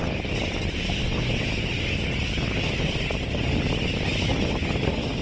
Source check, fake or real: real